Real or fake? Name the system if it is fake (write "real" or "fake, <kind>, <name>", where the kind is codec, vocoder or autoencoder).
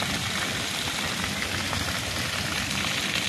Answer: real